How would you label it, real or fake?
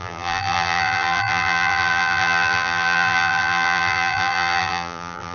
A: fake